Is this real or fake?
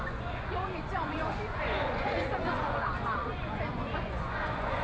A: fake